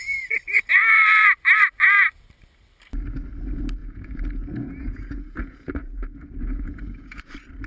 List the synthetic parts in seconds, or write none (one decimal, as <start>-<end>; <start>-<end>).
3.8-7.2